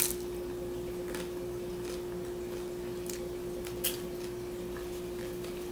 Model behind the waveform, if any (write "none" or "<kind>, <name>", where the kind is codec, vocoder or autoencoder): none